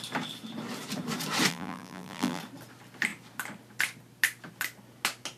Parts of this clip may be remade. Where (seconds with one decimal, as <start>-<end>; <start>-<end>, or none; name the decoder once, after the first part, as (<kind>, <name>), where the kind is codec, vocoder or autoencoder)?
1.5-2.4 (vocoder, BigVGAN v2)

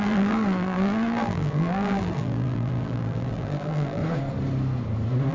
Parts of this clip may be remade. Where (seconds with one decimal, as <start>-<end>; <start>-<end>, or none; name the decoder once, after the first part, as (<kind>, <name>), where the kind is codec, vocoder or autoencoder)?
0.0-4.0 (vocoder, BigVGAN v2)

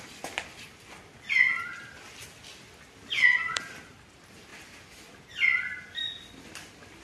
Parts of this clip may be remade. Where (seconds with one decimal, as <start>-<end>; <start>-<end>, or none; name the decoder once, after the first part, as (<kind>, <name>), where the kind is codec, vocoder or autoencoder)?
4.5-5.8 (vocoder, BigVGAN v2)

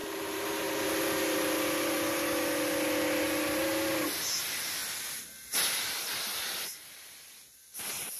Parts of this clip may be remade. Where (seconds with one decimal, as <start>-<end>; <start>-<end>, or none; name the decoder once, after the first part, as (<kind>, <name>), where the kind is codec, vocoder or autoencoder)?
0.0-1.6 (vocoder, BigVGAN v2)

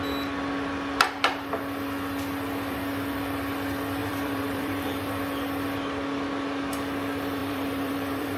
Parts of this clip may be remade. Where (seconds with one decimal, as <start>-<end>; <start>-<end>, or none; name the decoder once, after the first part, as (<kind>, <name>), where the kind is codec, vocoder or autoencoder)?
4.0-5.0 (vocoder, BigVGAN v2); 7.4-8.4

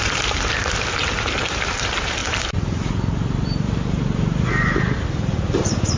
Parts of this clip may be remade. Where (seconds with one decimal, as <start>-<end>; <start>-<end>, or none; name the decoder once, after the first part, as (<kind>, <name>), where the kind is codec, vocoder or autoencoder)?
0.0-6.0 (vocoder, BigVGAN v2)